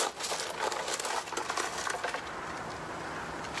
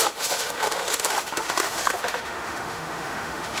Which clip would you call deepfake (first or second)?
second